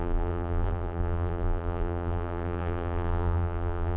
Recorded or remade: remade